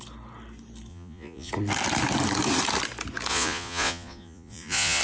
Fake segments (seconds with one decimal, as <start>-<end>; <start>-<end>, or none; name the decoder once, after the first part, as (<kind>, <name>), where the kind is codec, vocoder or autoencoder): 0.9-1.5 (vocoder, Vocos); 3.3-5.0